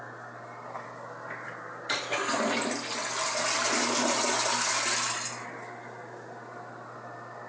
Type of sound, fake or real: real